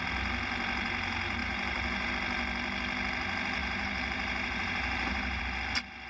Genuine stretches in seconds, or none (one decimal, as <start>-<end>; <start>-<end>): 0.0-1.4; 2.1-3.6; 5.4-6.1